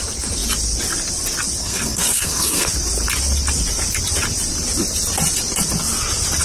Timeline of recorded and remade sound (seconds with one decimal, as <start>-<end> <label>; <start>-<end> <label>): 0.0-1.6 recorded; 1.6-2.7 remade; 2.7-6.4 recorded